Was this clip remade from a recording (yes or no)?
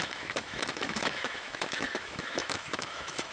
yes